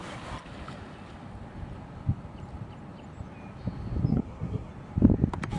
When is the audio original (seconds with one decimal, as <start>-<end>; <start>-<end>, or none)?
0.0-4.1; 4.7-5.6